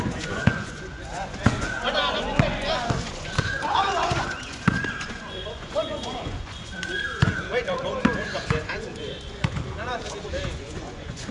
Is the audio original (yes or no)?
no